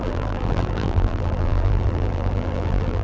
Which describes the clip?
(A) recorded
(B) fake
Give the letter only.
B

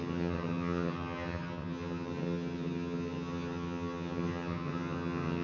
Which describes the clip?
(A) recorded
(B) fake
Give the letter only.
B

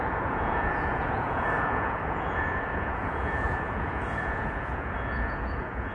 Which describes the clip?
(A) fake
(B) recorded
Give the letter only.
A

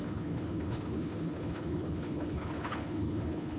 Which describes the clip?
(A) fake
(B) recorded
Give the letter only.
A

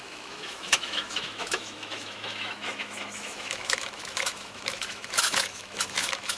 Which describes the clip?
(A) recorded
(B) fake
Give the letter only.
B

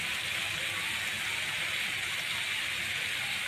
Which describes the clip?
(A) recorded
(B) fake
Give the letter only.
A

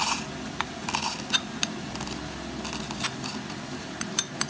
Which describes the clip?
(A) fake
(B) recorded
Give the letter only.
B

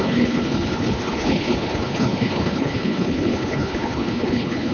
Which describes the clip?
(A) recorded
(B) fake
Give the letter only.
B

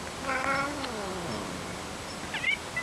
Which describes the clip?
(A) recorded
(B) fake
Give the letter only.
A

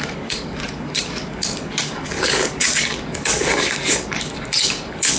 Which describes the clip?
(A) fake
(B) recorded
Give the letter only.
A